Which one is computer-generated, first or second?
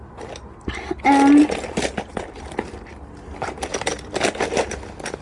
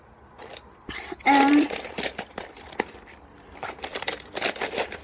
second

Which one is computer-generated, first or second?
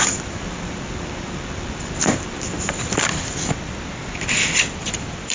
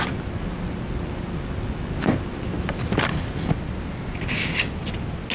first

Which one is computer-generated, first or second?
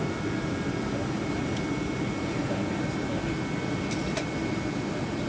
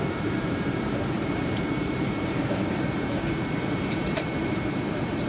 second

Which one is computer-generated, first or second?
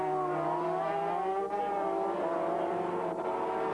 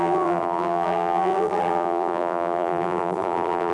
second